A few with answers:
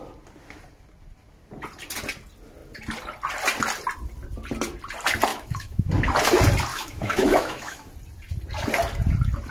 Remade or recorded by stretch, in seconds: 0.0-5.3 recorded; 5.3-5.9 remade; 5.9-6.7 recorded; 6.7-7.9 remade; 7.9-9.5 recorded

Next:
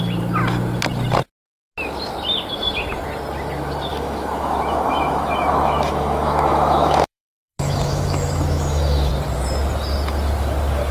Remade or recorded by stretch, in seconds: 0.0-3.9 recorded; 3.9-9.1 remade; 9.1-10.9 recorded